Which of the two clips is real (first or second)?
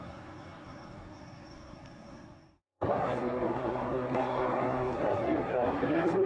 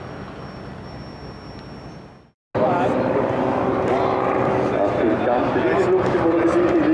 second